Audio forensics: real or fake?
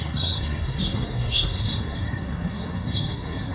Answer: fake